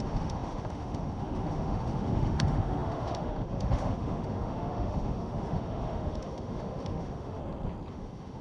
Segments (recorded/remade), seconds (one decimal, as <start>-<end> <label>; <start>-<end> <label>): 0.0-7.4 remade; 7.4-7.9 recorded; 7.9-8.4 remade